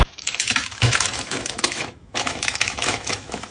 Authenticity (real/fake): fake